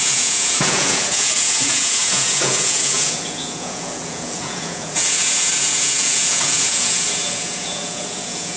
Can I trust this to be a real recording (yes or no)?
no